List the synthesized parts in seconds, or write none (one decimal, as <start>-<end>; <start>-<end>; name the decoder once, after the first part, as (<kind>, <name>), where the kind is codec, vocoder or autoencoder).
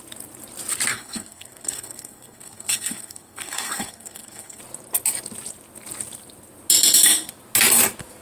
0.9-4.6 (codec, SNAC)